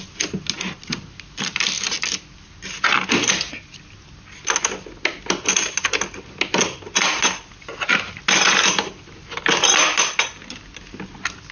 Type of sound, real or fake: real